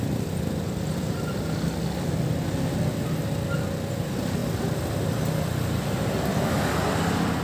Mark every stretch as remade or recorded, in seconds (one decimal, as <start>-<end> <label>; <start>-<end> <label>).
0.0-7.4 recorded